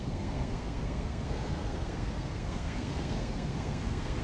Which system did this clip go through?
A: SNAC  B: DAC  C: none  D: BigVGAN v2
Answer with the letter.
A